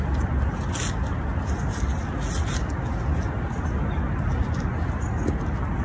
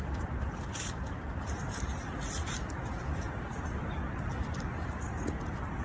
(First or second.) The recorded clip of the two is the first